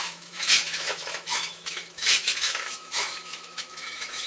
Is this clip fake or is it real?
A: fake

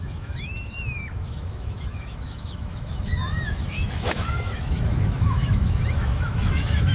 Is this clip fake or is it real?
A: fake